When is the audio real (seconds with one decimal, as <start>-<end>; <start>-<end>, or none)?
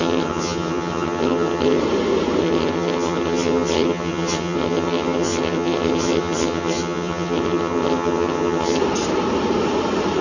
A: 1.8-2.4; 8.8-10.2